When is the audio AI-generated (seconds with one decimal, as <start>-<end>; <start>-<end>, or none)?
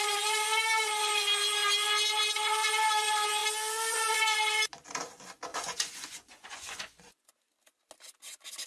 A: 5.5-7.3